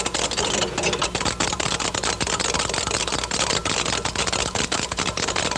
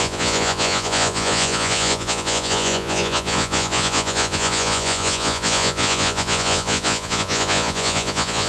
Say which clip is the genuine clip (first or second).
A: first